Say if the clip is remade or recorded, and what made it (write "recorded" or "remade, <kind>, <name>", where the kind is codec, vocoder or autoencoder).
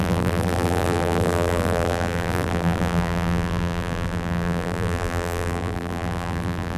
remade, vocoder, BigVGAN v2